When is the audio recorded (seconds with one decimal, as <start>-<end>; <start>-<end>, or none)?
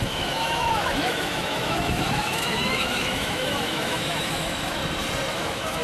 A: 4.8-5.3